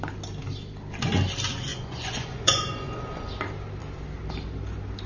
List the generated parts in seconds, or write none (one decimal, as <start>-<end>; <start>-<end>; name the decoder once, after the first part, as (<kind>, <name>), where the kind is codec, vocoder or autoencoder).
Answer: 1.7-3.3 (vocoder, Vocos)